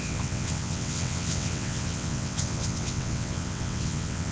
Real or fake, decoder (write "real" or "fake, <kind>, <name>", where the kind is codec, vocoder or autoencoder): fake, vocoder, WaveNeXt